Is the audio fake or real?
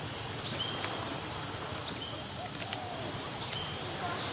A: real